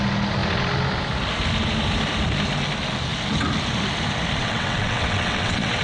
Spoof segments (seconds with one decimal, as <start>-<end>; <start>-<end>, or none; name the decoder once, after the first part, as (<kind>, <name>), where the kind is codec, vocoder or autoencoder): 4.4-5.8 (vocoder, WaveNeXt)